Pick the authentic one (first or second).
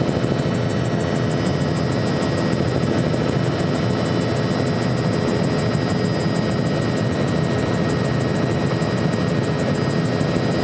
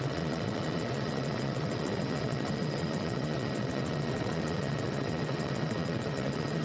first